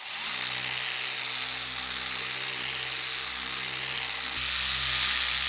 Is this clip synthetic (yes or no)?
no